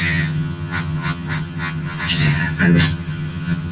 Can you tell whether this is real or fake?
fake